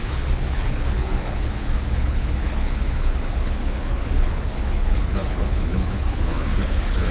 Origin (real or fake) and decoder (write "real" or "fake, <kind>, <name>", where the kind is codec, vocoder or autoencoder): fake, codec, HILCodec